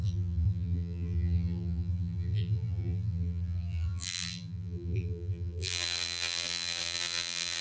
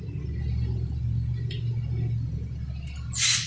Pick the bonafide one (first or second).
second